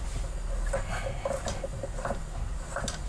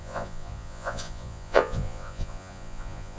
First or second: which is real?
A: first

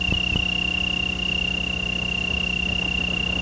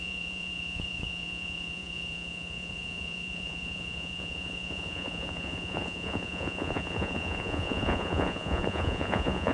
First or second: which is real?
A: first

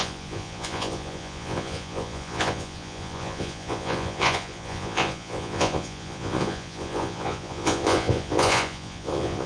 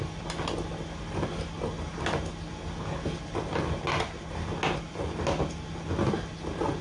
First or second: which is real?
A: second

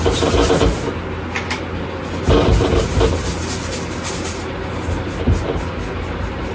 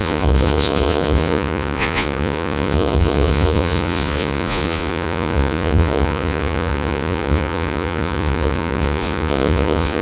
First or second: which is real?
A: first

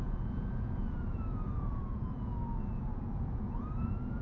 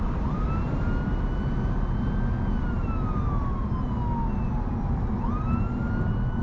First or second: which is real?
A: second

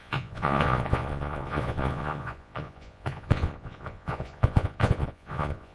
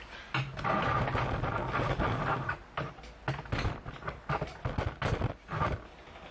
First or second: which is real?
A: second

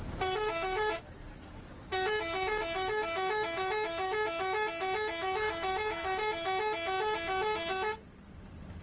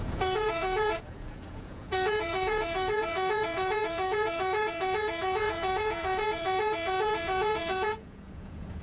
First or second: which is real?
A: first